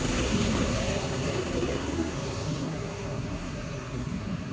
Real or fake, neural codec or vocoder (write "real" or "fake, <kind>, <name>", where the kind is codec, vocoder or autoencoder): fake, codec, SNAC